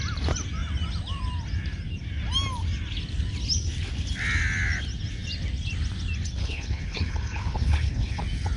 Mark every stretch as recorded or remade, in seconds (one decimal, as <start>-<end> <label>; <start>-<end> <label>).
0.0-6.4 recorded; 6.4-8.2 remade; 8.2-8.6 recorded